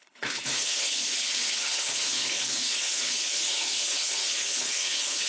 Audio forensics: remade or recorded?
remade